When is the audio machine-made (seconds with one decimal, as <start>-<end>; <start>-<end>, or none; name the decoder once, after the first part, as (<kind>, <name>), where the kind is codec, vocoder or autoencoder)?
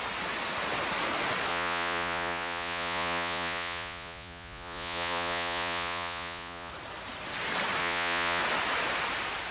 1.5-6.7 (vocoder, Vocos); 7.8-8.4